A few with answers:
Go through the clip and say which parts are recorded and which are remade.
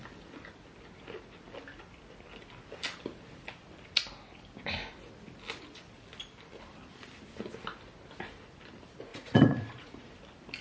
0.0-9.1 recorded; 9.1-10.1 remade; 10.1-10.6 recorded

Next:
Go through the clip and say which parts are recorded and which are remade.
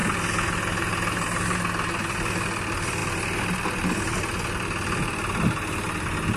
0.0-6.4 recorded